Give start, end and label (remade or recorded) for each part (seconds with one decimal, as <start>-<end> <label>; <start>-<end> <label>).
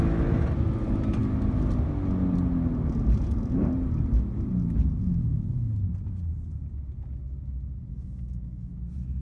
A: 0.0-7.9 recorded; 7.9-8.7 remade; 8.7-9.2 recorded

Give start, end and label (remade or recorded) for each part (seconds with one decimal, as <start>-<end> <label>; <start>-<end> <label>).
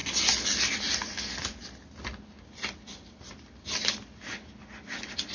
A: 0.0-5.3 recorded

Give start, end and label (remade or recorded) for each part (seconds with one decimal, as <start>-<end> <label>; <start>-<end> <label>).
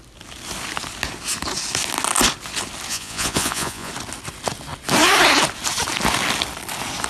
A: 0.0-2.9 recorded; 2.9-3.9 remade; 3.9-7.1 recorded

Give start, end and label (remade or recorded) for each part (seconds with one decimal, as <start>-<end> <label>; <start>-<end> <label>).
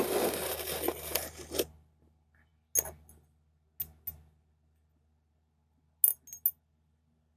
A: 0.0-7.4 recorded